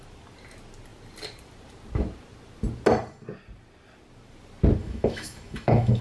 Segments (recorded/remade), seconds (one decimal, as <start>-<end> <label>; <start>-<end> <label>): 0.0-4.8 recorded; 4.8-6.0 remade